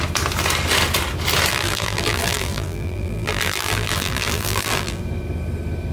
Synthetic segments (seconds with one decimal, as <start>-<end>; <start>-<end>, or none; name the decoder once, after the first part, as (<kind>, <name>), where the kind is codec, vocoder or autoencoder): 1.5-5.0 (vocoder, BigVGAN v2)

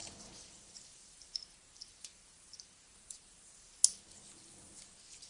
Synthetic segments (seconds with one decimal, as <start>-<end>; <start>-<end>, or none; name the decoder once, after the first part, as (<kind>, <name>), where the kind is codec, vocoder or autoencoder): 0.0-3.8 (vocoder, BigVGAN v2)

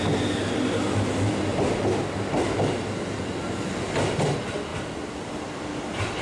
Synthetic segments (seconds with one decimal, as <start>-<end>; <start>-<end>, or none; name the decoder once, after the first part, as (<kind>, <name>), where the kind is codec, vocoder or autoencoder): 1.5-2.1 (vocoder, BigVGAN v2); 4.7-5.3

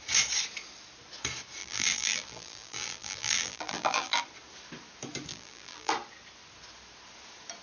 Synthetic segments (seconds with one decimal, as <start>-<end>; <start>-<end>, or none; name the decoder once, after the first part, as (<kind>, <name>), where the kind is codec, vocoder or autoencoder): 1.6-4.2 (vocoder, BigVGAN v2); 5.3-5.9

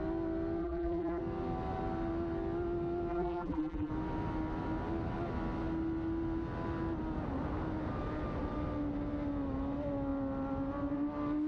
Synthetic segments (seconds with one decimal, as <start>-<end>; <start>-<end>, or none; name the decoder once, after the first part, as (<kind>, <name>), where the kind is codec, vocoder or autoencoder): 0.6-1.2 (vocoder, BigVGAN v2); 3.1-3.9